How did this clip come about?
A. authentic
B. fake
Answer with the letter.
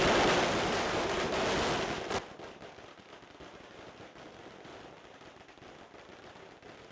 A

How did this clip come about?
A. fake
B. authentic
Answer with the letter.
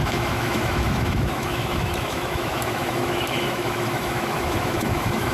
A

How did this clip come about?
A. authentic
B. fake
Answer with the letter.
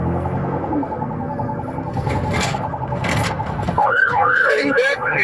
B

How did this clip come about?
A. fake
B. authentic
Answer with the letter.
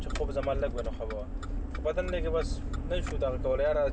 B